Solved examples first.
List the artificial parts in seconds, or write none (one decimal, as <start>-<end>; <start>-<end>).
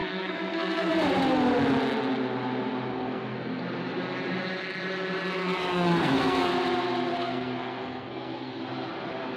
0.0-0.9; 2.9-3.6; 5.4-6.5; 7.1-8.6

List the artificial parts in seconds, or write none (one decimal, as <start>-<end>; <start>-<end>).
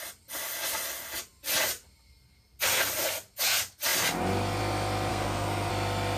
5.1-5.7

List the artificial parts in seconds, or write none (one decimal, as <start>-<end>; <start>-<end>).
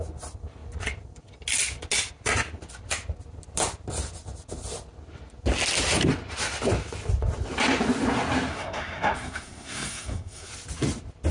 8.5-10.5